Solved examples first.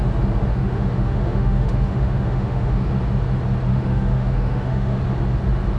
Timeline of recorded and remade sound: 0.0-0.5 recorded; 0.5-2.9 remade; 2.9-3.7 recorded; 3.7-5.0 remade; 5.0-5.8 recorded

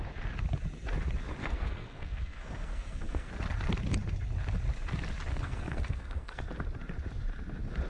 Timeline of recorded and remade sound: 0.0-1.4 recorded; 1.4-3.3 remade; 3.3-5.3 recorded; 5.3-6.4 remade; 6.4-7.9 recorded

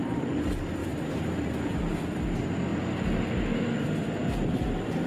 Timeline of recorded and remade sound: 0.0-0.8 recorded; 0.8-2.0 remade; 2.0-5.1 recorded

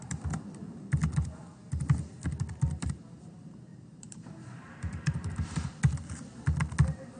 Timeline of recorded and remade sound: 0.0-3.7 recorded; 3.7-5.7 remade; 5.7-7.2 recorded

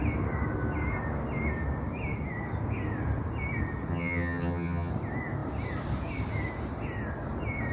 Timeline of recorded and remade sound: 0.0-3.9 recorded; 3.9-4.9 remade; 4.9-7.7 recorded

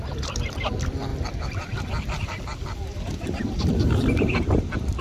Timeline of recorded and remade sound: 0.0-5.0 remade